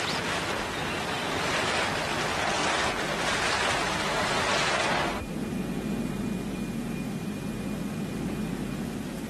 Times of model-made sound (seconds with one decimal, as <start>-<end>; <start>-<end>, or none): 2.6-5.2